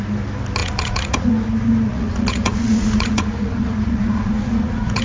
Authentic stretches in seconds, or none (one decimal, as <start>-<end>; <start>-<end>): 0.0-0.6; 1.3-1.9